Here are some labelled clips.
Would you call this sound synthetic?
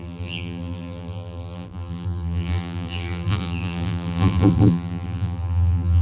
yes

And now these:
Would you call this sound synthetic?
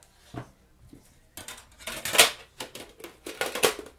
no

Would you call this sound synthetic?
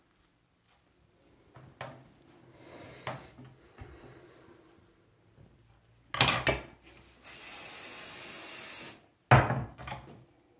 no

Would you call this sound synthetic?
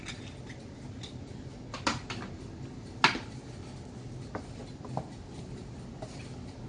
no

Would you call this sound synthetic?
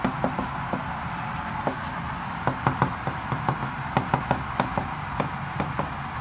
no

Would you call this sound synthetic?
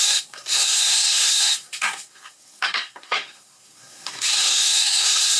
yes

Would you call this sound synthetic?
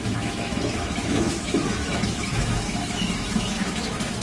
yes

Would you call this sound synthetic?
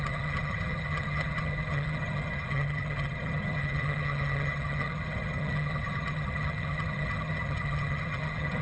yes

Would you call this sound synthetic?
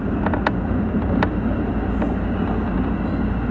no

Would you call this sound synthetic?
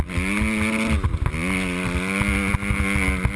no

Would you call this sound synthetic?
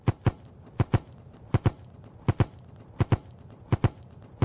no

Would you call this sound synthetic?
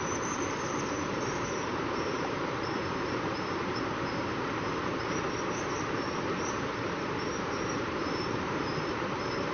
yes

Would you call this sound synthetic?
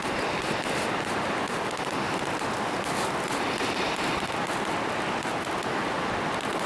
no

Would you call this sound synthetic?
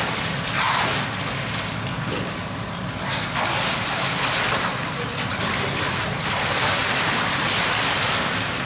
no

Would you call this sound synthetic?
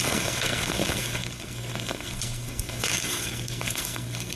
yes